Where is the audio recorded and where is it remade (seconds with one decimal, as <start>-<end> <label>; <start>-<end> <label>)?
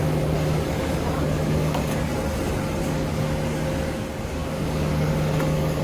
0.0-2.1 remade; 2.1-2.8 recorded; 2.8-5.8 remade